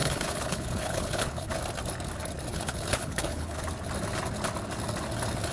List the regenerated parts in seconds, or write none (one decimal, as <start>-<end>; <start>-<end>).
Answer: 0.0-1.5; 2.5-3.6